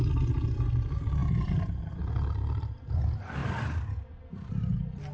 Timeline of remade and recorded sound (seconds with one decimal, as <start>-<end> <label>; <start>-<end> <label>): 0.0-5.1 recorded